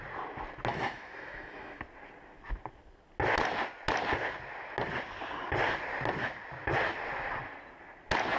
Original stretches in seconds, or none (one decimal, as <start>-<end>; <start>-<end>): 0.0-0.7; 1.8-8.4